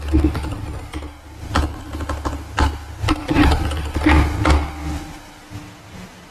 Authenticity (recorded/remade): recorded